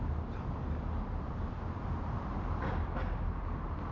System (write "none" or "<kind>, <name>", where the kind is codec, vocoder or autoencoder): none